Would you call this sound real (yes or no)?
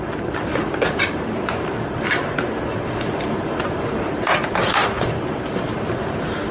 no